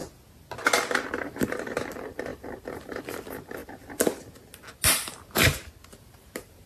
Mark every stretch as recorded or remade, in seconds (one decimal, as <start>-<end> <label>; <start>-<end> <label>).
0.0-1.1 recorded; 1.1-3.6 remade; 3.6-6.0 recorded; 6.0-6.7 remade